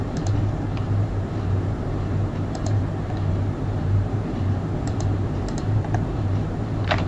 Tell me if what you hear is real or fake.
fake